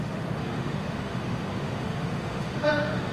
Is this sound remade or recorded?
remade